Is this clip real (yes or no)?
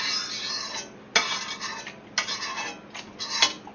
yes